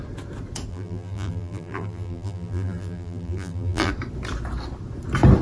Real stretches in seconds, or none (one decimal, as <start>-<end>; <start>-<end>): 0.0-0.7; 3.9-5.4